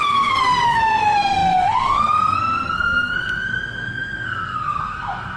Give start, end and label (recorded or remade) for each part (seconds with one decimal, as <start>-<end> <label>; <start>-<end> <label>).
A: 0.0-5.4 remade